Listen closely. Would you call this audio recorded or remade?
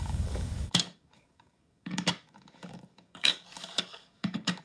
remade